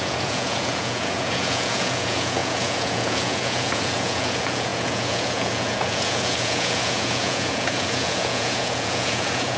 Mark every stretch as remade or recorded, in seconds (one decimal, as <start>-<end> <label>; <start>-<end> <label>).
0.0-9.6 remade